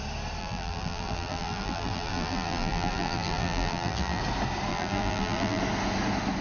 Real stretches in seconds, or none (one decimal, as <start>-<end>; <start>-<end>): 0.0-0.4; 4.2-4.7; 5.6-6.4